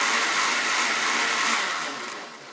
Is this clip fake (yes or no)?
yes